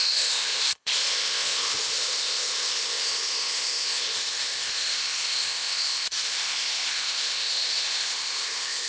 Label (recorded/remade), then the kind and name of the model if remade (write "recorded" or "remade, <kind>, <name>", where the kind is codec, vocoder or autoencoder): remade, codec, ZipCodec